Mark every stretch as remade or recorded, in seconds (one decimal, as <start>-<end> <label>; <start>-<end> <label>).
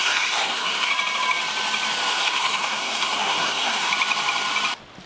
0.0-0.9 remade; 0.9-2.1 recorded; 2.1-3.9 remade; 3.9-5.1 recorded